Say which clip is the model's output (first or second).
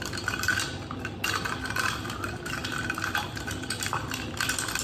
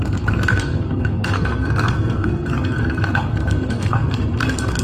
second